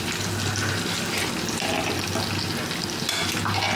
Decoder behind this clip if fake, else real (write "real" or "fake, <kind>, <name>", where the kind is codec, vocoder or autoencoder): real